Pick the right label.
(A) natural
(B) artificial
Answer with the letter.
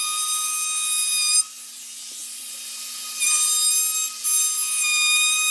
A